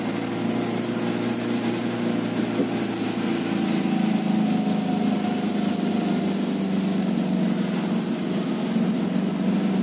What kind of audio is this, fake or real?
real